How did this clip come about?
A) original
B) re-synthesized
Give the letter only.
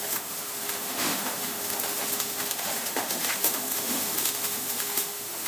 B